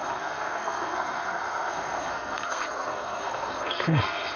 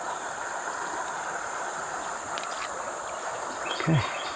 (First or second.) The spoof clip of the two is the first